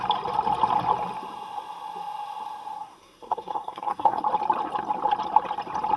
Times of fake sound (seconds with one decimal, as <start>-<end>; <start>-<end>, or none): 2.8-4.2